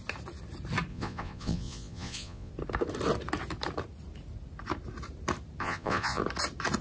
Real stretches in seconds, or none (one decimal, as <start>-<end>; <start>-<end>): 0.0-0.9; 2.5-5.6; 6.2-6.8